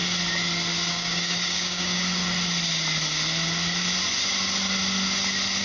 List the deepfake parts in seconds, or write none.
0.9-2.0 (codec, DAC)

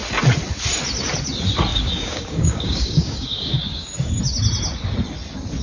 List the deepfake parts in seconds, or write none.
1.7-4.2 (codec, DAC)

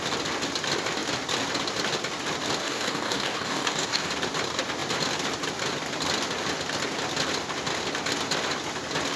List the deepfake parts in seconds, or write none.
2.6-4.1 (codec, DAC)

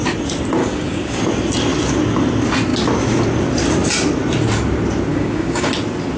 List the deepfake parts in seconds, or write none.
0.6-1.2 (codec, DAC); 5.1-5.7